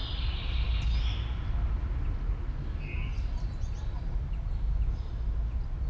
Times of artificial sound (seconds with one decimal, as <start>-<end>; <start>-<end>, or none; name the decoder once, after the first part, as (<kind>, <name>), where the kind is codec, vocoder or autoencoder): 0.0-0.8 (vocoder, BigVGAN v2)